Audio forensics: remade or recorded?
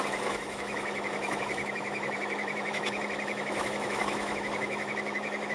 remade